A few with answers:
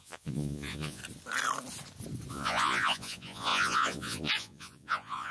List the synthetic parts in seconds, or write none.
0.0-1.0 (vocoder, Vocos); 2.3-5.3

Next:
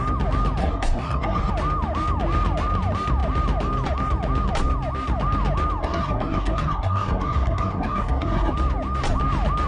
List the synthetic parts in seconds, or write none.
0.6-1.5 (codec, SNAC); 5.8-8.5

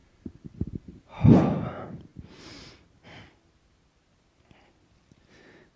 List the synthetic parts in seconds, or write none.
0.0-1.3 (vocoder, BigVGAN v2); 2.1-2.9

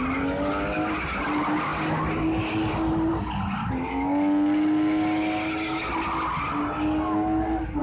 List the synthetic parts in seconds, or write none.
none

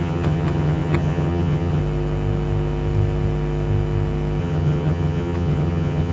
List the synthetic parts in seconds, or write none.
0.0-1.8 (vocoder, HiFi-GAN); 4.4-6.1

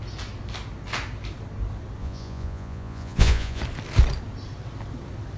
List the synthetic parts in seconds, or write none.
2.0-3.6 (vocoder, Vocos)

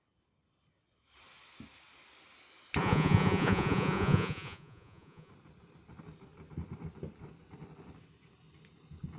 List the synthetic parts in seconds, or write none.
2.8-5.3 (vocoder, Vocos)